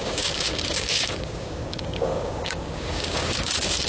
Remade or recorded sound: remade